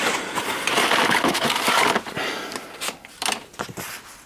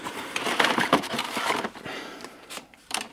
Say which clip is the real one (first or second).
first